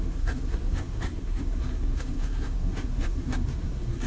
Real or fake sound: fake